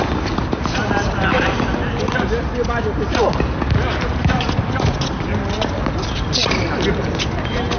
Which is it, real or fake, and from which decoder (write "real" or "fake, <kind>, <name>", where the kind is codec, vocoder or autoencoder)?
real